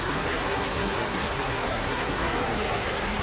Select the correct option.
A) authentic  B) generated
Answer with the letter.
B